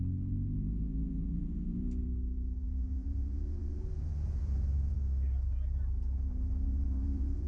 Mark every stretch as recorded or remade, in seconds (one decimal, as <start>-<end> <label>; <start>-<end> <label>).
0.0-5.0 remade; 5.0-6.3 recorded; 6.3-7.5 remade

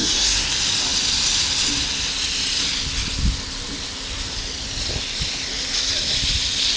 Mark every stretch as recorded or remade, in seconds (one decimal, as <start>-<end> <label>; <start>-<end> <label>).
0.0-0.5 remade; 0.5-6.8 recorded

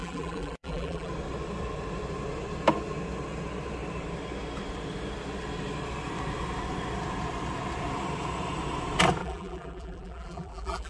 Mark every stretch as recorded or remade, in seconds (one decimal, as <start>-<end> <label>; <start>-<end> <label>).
0.0-1.1 remade; 1.1-9.2 recorded; 9.2-10.9 remade

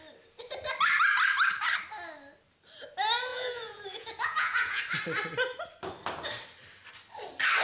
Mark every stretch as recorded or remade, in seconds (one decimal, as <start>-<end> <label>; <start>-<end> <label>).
0.0-3.3 recorded; 3.3-4.8 remade; 4.8-7.6 recorded

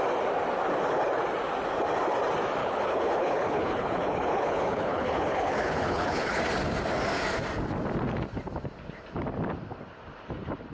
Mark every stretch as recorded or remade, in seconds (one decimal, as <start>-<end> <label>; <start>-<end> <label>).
0.0-2.6 recorded; 2.6-6.4 remade; 6.4-10.7 recorded

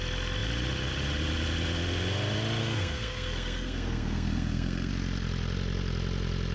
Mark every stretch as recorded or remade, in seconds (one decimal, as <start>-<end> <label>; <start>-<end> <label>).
0.0-2.6 recorded; 2.6-4.9 remade; 4.9-6.5 recorded